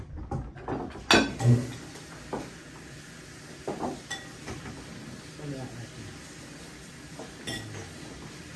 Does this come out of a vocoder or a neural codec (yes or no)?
no